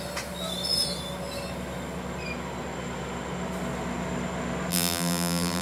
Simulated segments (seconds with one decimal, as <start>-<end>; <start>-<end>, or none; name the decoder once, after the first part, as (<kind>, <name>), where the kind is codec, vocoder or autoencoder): 4.7-5.6 (vocoder, BigVGAN v2)

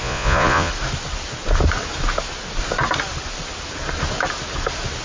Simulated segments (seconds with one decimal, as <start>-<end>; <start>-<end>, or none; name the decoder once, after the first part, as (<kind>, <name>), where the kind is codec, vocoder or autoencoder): 0.0-0.7 (vocoder, Vocos)

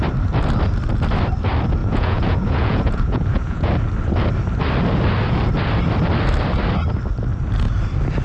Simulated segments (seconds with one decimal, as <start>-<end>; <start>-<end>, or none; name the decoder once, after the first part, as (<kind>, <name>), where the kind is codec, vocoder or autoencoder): 1.8-3.7 (vocoder, Vocos)